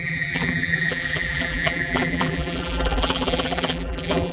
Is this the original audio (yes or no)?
no